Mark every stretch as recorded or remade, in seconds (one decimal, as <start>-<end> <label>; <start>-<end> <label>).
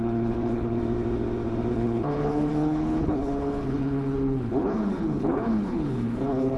0.0-0.8 remade; 0.8-1.7 recorded; 1.7-6.6 remade